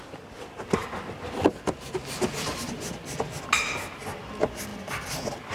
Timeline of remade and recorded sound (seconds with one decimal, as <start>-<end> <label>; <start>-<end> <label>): 0.0-5.5 recorded